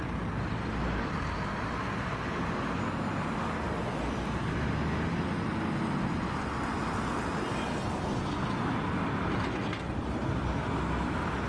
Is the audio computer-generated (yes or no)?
no